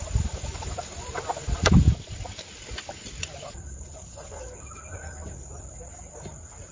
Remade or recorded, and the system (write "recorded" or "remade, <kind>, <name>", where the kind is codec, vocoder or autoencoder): recorded